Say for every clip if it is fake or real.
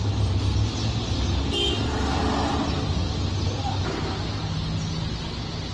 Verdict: real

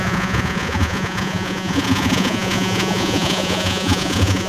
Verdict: fake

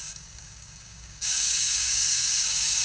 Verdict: fake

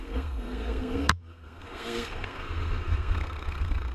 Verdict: fake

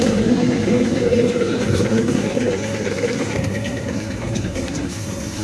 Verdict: fake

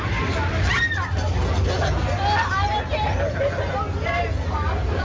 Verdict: real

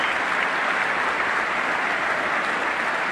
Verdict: real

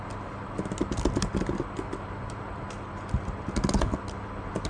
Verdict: real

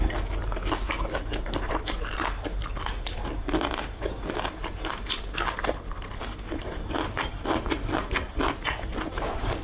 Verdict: real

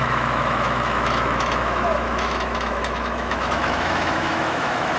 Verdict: fake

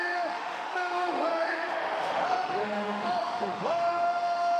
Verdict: fake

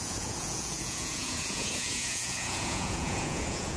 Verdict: fake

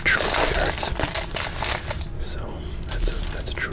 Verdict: real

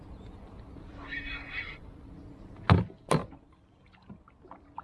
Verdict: real